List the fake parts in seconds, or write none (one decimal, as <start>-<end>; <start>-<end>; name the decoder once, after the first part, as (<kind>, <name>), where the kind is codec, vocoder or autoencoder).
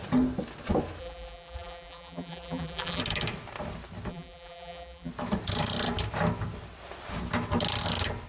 1.0-3.0 (vocoder, BigVGAN v2); 4.1-5.1